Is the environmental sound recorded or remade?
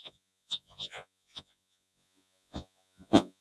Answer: remade